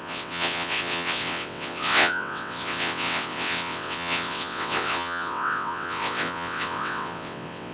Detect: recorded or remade remade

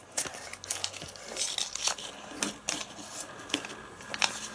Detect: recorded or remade recorded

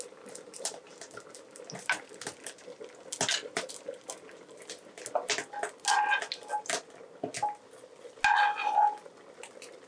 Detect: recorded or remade recorded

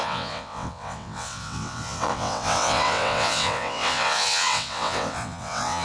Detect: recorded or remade remade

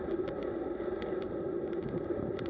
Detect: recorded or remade recorded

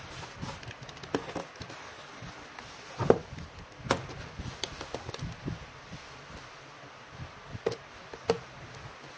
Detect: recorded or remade recorded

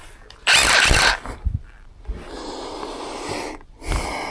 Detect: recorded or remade recorded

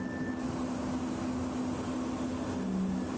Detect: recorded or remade recorded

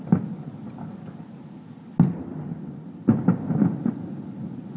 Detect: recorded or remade recorded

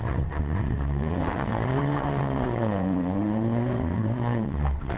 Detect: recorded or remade remade